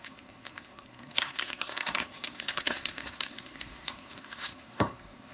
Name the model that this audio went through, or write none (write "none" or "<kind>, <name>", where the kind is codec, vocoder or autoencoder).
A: codec, SNAC